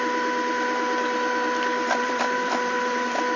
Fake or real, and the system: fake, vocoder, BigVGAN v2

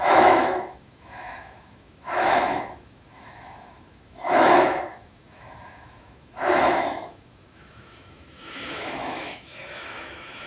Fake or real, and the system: fake, autoencoder, DAC-VAE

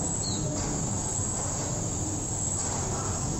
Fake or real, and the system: real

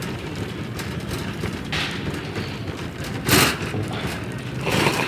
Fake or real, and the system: real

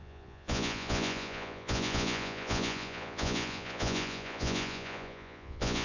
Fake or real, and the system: fake, vocoder, Vocos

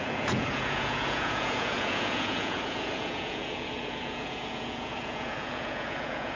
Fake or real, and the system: fake, vocoder, Vocos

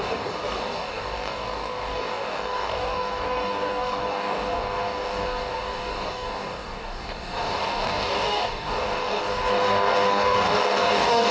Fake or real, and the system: fake, codec, DAC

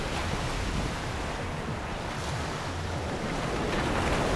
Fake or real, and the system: real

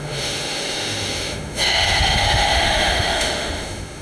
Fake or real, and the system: fake, autoencoder, DAC-VAE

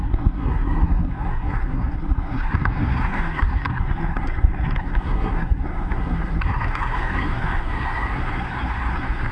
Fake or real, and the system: fake, codec, SNAC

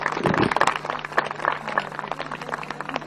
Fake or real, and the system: real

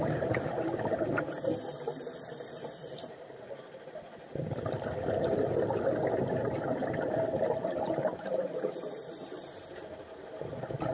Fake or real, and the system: fake, vocoder, BigVGAN v2